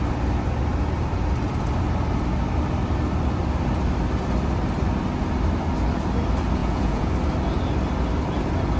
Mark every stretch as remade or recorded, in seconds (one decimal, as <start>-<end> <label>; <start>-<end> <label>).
0.0-6.6 recorded; 6.6-7.1 remade; 7.1-8.8 recorded